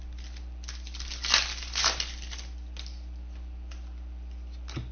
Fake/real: real